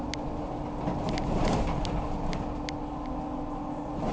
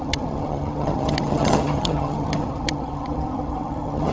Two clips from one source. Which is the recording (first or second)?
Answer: first